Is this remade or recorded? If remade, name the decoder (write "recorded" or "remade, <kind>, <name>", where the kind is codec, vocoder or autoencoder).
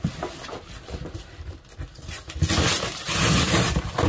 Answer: recorded